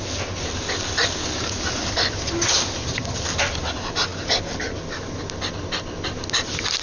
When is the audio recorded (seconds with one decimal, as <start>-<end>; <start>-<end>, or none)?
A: 0.0-6.8